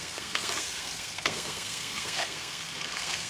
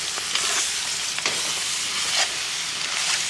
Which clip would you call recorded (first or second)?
second